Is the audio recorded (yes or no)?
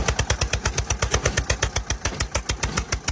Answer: yes